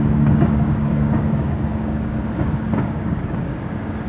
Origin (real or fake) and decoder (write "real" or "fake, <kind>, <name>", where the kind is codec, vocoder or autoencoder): fake, codec, DAC